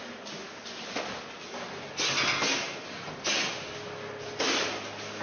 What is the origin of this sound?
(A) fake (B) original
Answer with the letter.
B